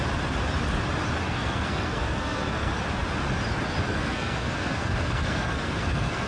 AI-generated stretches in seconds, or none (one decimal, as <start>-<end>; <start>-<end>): 1.2-2.7; 3.9-6.3